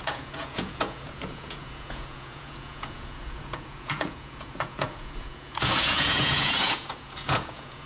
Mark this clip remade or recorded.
remade